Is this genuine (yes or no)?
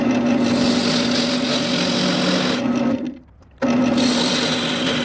yes